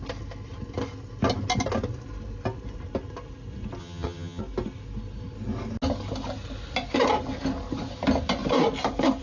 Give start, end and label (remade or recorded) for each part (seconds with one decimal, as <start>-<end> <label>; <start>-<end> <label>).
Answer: 0.0-3.8 recorded; 3.8-4.4 remade; 4.4-9.2 recorded